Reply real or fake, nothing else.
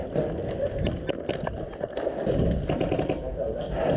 real